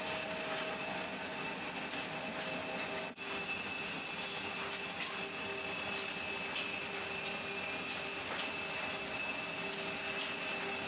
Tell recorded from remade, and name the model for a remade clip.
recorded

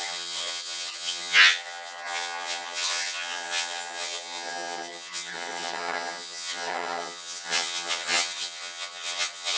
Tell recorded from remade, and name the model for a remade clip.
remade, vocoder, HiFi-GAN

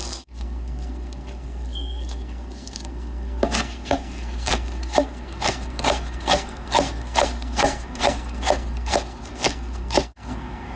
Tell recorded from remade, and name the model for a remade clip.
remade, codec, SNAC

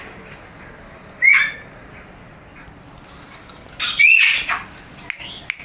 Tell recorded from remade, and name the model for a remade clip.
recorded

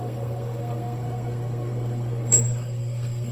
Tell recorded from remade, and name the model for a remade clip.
remade, codec, SNAC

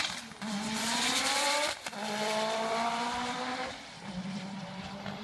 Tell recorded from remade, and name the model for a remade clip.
remade, vocoder, BigVGAN v2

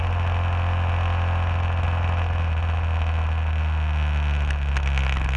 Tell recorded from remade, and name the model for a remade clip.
recorded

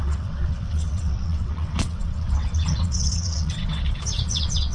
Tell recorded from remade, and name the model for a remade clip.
remade, vocoder, WaveNeXt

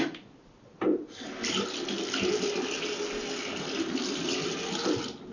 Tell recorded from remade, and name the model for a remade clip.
recorded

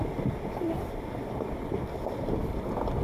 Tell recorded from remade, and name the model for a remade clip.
recorded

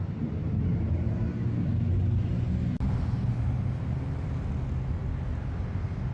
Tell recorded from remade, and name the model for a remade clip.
recorded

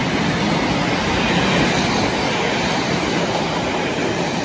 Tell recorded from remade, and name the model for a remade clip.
recorded